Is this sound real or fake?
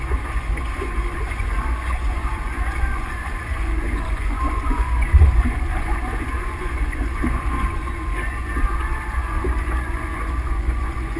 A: fake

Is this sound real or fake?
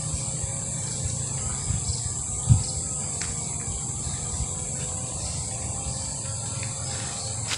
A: real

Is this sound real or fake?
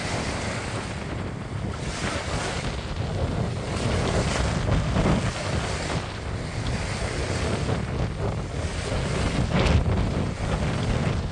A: real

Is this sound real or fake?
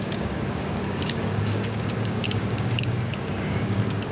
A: fake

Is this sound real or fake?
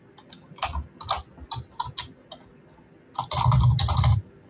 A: real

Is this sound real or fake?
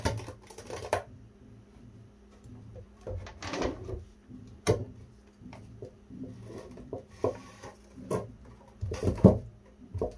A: fake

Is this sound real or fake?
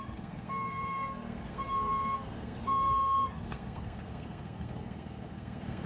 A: fake